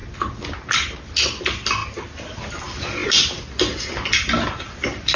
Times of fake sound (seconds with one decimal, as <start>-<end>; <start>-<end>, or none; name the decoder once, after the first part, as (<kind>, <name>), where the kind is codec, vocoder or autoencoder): none